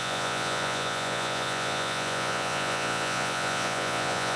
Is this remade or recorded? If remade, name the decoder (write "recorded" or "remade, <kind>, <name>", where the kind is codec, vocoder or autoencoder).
remade, vocoder, Vocos